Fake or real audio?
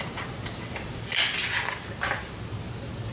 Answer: real